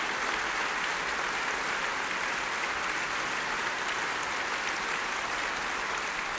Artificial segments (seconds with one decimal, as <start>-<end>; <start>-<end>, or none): none

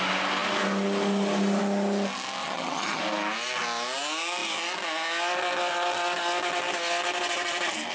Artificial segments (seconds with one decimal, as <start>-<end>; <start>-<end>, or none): 2.4-3.0

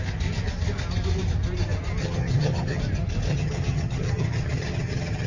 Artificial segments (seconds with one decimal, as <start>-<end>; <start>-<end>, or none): 2.0-2.8; 3.3-5.3

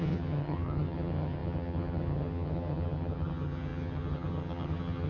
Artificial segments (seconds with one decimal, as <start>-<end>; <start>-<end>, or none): 0.0-5.1

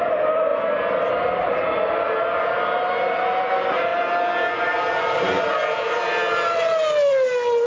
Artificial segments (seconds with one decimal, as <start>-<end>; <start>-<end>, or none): none

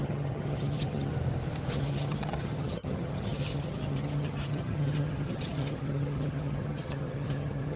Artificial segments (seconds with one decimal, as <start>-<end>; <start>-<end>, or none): 0.0-1.1; 1.7-7.8

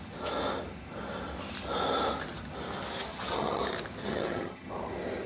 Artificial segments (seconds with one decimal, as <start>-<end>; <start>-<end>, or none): 3.1-3.6; 4.0-4.7